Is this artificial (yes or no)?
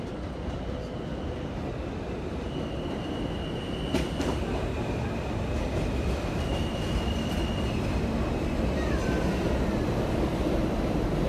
no